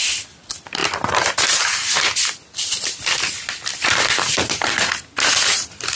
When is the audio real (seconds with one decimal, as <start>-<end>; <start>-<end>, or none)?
0.0-5.9